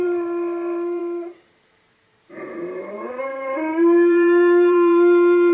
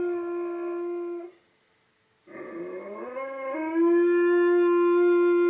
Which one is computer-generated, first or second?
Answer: first